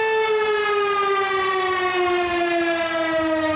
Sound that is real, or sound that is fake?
real